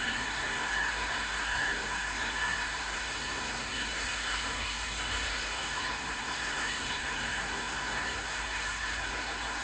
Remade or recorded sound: remade